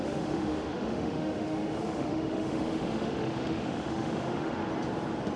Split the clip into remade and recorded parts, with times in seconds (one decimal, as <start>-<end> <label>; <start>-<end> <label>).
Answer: 0.0-4.6 remade; 4.6-5.4 recorded